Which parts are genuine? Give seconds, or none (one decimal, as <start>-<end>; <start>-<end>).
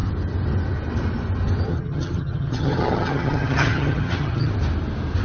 0.0-1.7; 4.5-5.2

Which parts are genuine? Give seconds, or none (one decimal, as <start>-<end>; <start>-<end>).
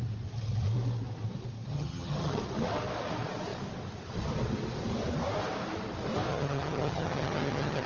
0.0-1.7; 2.4-6.3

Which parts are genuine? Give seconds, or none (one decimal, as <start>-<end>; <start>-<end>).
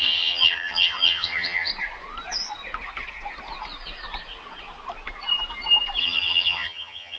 1.7-6.0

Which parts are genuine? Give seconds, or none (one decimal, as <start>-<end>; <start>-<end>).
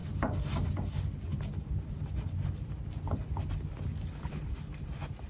0.0-5.3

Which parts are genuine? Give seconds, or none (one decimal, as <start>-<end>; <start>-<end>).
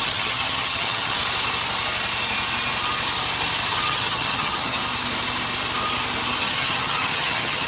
1.2-3.7; 4.8-6.4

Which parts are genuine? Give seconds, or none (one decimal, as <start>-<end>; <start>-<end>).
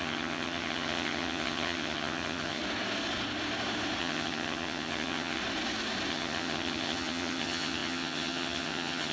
2.6-4.0; 5.4-6.1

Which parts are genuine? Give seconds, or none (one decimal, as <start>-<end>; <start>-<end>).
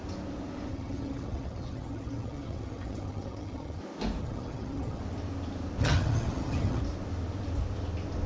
0.0-0.7; 3.8-4.2; 5.0-5.8; 6.8-8.3